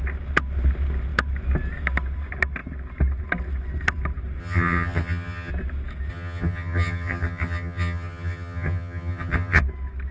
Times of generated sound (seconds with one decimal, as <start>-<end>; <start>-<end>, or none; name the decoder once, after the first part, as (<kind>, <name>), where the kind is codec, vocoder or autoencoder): 4.4-5.5 (vocoder, HiFi-GAN); 6.1-9.6